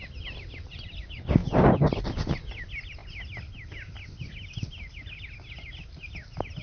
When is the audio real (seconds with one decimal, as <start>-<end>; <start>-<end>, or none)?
0.0-6.6